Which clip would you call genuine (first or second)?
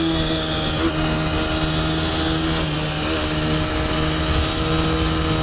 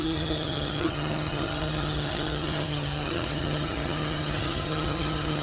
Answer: first